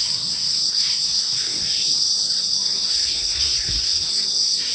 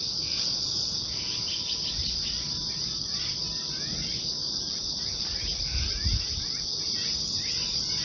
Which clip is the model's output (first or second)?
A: first